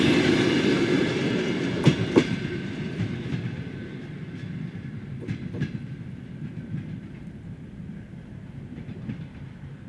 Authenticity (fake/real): fake